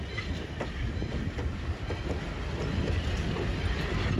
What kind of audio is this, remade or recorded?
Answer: recorded